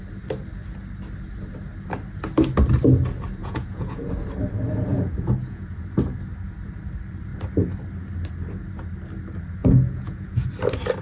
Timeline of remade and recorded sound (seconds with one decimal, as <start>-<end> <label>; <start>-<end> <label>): 0.0-3.4 recorded; 3.4-4.1 remade; 4.1-4.9 recorded; 4.9-5.8 remade; 5.8-9.6 recorded; 9.6-10.5 remade; 10.5-11.0 recorded